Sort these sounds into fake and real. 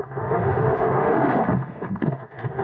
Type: fake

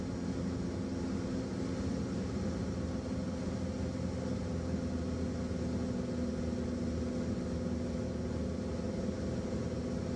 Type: real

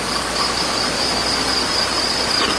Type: real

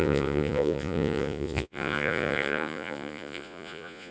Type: fake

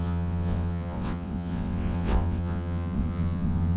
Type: fake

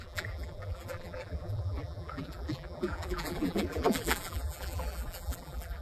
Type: fake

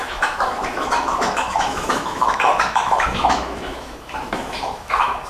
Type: fake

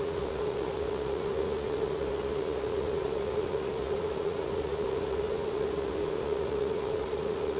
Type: fake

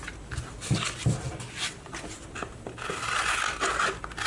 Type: real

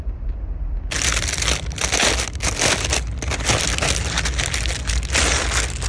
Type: real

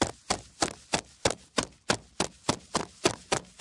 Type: real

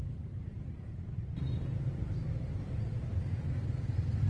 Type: fake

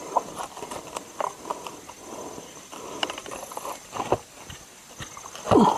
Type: real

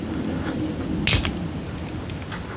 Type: real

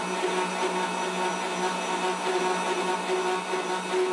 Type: real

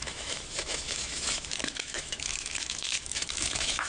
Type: fake